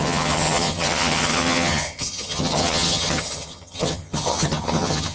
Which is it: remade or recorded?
remade